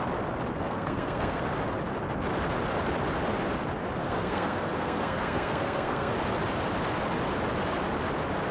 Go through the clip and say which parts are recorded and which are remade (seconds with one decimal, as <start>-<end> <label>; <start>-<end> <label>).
0.0-0.5 recorded; 0.5-1.4 remade; 1.4-4.0 recorded; 4.0-6.1 remade; 6.1-8.5 recorded